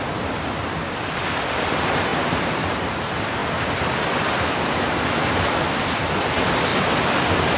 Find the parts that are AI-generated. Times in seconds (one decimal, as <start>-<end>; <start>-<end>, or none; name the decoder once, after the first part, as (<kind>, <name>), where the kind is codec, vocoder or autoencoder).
none

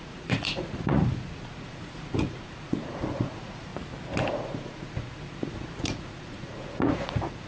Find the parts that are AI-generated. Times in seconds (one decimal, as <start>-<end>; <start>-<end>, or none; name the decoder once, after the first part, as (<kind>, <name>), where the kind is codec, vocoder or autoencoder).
0.0-3.7 (vocoder, Vocos); 4.3-7.5

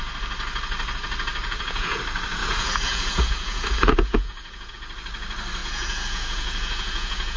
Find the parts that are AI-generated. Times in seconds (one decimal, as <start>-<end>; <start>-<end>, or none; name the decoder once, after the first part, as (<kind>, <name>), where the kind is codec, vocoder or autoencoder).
1.4-2.0 (vocoder, Vocos); 2.4-4.7; 5.6-7.4

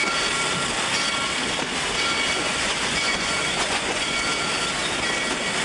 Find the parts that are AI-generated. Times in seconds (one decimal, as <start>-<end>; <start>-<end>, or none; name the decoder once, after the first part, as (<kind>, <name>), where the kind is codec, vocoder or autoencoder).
2.3-4.3 (vocoder, Vocos)

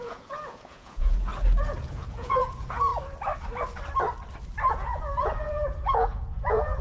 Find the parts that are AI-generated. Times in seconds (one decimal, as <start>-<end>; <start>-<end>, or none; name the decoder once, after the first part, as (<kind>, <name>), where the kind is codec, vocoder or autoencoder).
0.0-1.3 (vocoder, Vocos); 1.9-2.9; 4.7-6.8

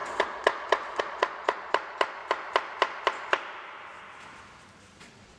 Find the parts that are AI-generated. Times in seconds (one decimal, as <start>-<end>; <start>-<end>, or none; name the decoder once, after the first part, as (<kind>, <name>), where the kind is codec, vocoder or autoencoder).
0.0-2.2 (vocoder, Vocos); 5.0-5.4

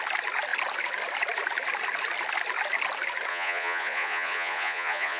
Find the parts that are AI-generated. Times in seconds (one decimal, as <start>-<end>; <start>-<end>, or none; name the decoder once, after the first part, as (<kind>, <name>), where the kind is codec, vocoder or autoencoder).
3.3-5.2 (vocoder, Vocos)

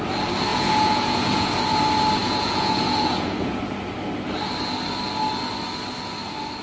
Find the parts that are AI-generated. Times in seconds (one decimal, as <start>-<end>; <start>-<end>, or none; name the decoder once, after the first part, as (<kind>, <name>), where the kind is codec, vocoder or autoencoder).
0.5-1.5 (vocoder, Vocos); 2.2-3.6